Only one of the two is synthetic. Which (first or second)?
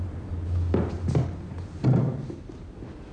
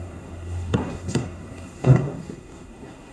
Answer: second